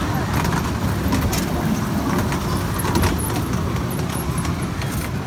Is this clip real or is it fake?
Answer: real